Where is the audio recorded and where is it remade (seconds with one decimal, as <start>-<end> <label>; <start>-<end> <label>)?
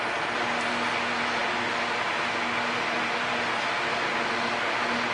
0.0-5.1 recorded